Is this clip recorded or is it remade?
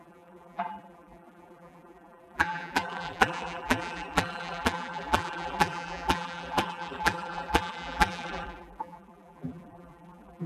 remade